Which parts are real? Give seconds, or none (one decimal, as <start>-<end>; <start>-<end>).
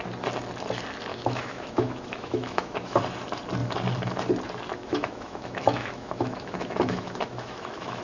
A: 0.0-1.1; 3.0-4.7